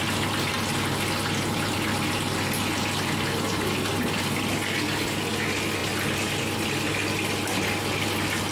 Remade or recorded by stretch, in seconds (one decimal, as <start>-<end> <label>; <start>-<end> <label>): 0.0-8.5 recorded